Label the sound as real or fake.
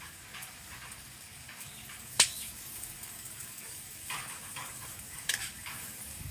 fake